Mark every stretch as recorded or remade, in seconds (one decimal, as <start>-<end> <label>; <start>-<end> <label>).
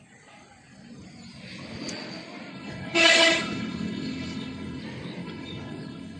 0.0-2.5 recorded; 2.5-4.8 remade; 4.8-5.2 recorded; 5.2-6.2 remade